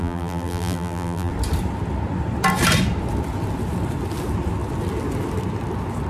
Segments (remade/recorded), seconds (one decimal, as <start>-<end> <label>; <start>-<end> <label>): 0.0-1.3 remade; 1.3-6.1 recorded